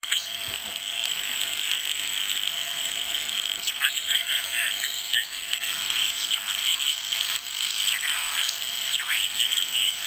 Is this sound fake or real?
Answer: fake